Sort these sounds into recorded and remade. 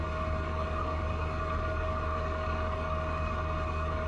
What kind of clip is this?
remade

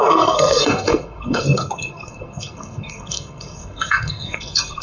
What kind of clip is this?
remade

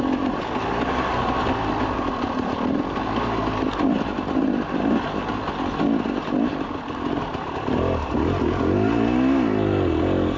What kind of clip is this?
recorded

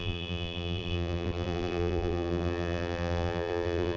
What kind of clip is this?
remade